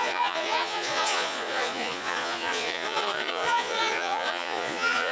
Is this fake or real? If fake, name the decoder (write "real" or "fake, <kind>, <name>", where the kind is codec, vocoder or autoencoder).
fake, vocoder, Vocos